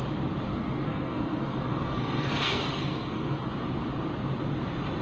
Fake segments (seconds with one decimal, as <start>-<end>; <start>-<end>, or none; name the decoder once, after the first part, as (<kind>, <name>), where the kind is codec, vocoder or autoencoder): 0.5-3.5 (codec, SNAC)